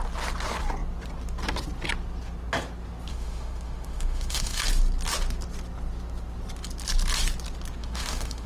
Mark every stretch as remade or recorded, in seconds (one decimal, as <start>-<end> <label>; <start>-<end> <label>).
0.0-3.1 recorded; 3.1-4.6 remade; 4.6-7.8 recorded; 7.8-8.5 remade